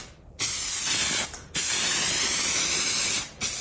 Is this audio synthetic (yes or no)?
no